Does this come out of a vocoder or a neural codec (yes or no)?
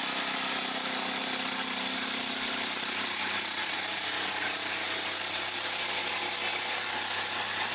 no